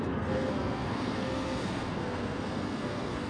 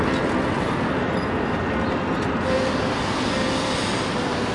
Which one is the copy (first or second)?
first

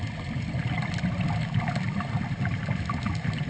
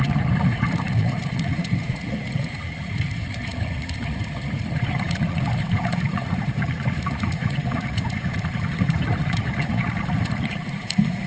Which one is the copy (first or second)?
second